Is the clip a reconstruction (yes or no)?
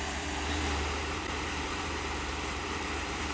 yes